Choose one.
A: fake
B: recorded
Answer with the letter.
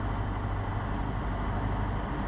B